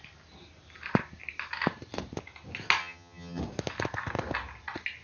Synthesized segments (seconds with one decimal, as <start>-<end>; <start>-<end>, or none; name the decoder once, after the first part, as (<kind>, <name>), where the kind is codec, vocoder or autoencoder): 2.8-3.4 (vocoder, HiFi-GAN)

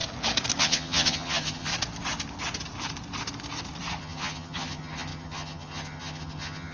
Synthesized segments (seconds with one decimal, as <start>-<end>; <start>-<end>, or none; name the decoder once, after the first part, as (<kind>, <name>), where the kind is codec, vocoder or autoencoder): 0.6-1.7 (vocoder, HiFi-GAN); 4.0-6.7

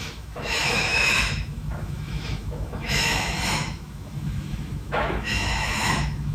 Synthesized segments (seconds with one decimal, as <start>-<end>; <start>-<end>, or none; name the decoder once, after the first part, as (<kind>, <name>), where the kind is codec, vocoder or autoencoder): 0.0-6.3 (autoencoder, DAC-VAE)

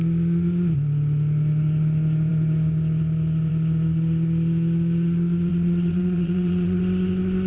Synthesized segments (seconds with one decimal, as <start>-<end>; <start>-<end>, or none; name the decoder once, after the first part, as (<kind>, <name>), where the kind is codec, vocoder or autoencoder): 5.5-6.8 (vocoder, WaveNeXt)

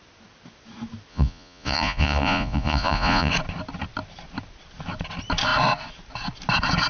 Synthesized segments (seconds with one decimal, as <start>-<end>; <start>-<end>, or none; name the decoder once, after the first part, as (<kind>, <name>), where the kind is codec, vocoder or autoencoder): 1.1-3.3 (vocoder, Vocos)

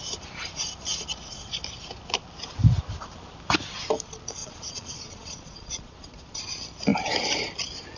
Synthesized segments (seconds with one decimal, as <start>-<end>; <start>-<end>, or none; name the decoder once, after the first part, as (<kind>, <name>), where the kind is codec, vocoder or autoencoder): 4.4-6.4 (vocoder, Vocos)